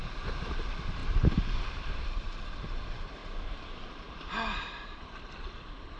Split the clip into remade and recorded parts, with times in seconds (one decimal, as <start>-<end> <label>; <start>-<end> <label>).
0.0-1.0 remade; 1.0-1.6 recorded; 1.6-6.0 remade